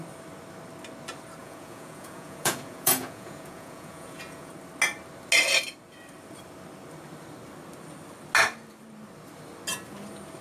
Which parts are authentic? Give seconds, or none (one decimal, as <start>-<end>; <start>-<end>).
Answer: 0.0-1.4; 4.5-10.4